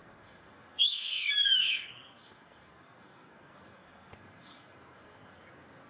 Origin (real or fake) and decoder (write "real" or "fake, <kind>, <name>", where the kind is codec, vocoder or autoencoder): fake, codec, SNAC